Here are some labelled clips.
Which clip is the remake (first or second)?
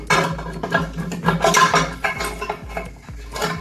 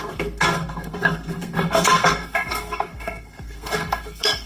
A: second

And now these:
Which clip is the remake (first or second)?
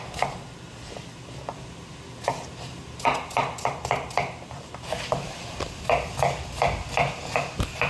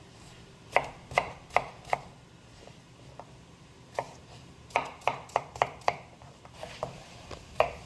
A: second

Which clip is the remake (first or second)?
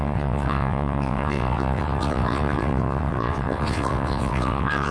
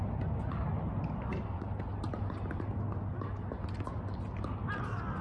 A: first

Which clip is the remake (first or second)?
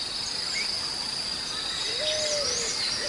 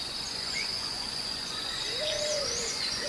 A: second